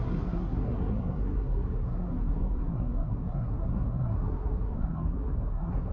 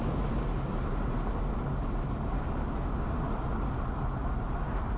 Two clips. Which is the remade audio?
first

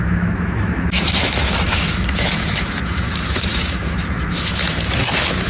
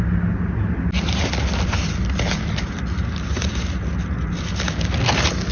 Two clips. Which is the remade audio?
first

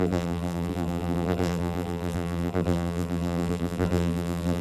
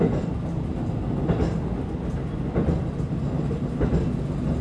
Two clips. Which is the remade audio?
first